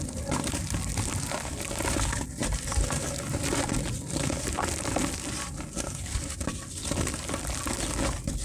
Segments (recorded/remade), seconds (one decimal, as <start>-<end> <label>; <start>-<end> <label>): 0.0-8.4 recorded